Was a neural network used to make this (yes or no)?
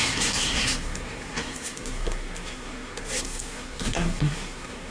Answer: yes